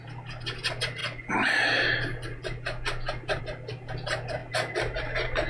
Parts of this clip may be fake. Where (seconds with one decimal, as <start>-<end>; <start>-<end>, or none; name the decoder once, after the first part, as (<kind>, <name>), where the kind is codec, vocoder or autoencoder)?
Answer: none